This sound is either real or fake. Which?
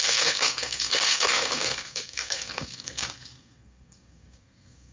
fake